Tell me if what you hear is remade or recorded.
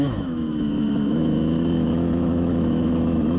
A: remade